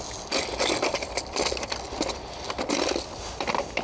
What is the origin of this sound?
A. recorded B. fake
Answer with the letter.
A